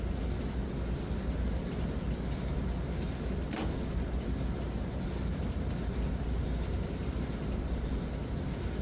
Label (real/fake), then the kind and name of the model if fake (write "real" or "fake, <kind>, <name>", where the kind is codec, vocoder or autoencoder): real